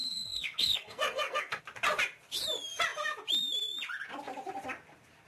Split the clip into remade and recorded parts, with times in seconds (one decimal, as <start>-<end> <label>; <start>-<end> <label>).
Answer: 0.0-1.6 remade; 1.6-5.3 recorded